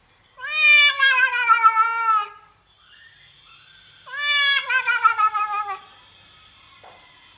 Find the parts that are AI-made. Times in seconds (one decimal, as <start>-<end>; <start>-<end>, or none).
none